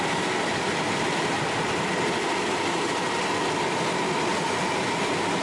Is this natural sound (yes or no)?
yes